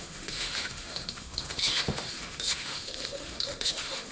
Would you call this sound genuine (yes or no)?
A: no